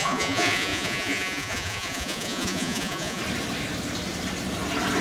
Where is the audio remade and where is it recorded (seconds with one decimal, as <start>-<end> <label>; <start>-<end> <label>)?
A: 0.0-3.2 remade; 3.2-5.0 recorded